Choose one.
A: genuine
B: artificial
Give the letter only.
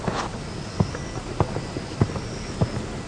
A